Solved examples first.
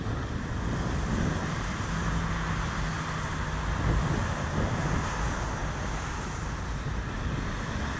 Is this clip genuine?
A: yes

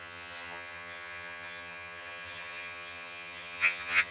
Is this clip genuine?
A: no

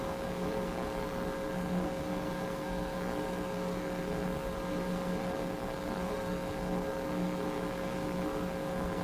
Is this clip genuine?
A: no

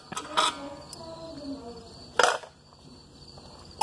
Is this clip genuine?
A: yes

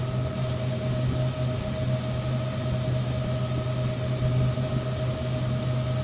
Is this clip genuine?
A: yes